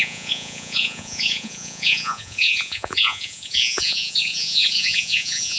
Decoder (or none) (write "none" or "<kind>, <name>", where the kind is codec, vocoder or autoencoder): vocoder, Vocos